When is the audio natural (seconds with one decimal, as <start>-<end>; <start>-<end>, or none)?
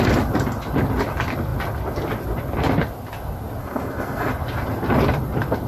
0.0-3.6; 4.3-5.7